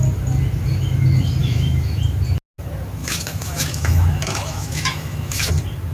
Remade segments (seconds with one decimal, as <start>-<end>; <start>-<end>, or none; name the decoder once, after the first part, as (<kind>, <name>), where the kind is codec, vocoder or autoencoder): 1.4-2.0 (autoencoder, DAC-VAE); 3.0-5.5